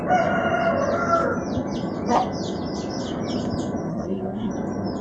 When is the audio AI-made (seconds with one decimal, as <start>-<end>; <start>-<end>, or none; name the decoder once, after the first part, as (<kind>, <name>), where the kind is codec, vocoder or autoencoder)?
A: 3.9-4.5 (codec, SNAC)